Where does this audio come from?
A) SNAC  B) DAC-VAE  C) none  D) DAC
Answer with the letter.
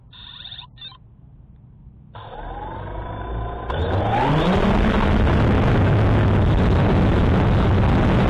C